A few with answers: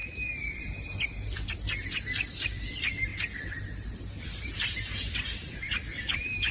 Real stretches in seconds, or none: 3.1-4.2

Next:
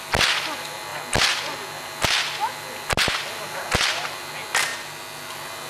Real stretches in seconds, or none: 0.0-5.7

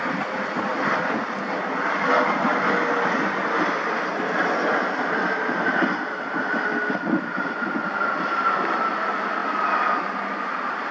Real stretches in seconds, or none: 0.0-9.4